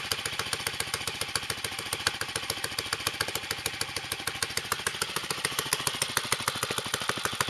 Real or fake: real